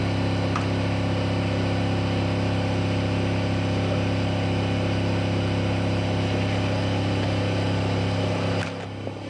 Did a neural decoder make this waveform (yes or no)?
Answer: no